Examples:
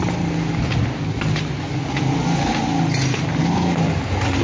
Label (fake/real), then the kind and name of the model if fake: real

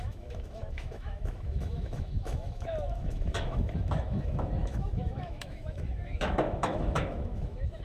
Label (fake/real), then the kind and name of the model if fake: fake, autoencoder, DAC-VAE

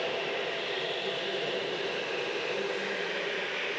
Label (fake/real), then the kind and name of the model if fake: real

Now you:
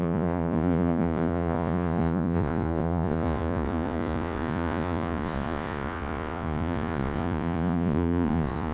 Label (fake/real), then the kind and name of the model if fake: fake, vocoder, Vocos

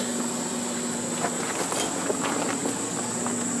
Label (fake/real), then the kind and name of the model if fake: real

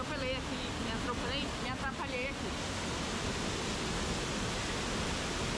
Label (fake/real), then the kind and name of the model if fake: real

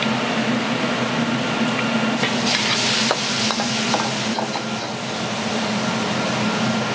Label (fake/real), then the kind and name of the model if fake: real